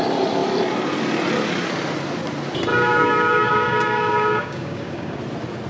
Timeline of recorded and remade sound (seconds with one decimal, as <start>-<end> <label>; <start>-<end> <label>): 0.0-2.7 recorded; 2.7-5.2 remade; 5.2-5.7 recorded